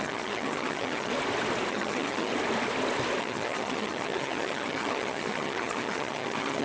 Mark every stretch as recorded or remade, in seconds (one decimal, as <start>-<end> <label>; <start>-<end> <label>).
0.0-1.1 remade; 1.1-1.7 recorded; 1.7-2.3 remade; 2.3-3.2 recorded; 3.2-6.6 remade